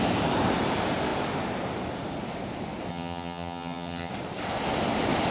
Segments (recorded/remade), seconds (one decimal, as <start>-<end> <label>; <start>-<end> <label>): 0.0-2.9 recorded; 2.9-4.1 remade; 4.1-5.3 recorded